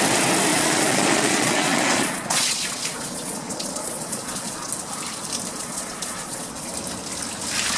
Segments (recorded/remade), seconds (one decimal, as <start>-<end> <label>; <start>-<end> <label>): 0.0-0.5 recorded; 0.5-4.7 remade; 4.7-5.5 recorded; 5.5-6.7 remade; 6.7-7.8 recorded